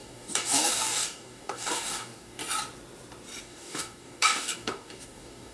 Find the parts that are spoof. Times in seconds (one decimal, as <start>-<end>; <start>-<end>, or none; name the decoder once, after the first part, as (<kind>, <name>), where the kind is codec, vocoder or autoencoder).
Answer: 0.0-2.4 (codec, DAC); 3.4-5.5